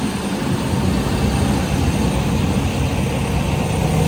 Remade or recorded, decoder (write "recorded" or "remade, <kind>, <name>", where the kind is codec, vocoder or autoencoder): recorded